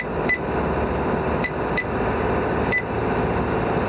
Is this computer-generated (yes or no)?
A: no